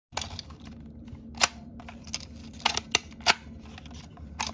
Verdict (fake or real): real